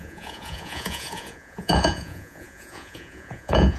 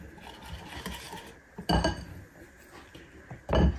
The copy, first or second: first